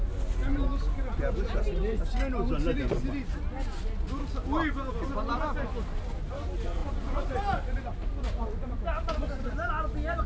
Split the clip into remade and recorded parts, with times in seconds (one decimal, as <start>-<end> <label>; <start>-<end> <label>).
0.0-10.3 recorded